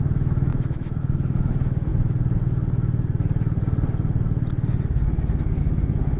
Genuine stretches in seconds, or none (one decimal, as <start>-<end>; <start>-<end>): 1.9-5.6